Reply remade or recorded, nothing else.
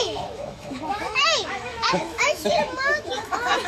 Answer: remade